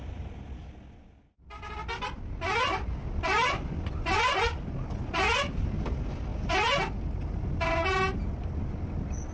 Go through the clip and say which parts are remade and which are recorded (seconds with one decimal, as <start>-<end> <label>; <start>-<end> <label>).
0.0-9.3 recorded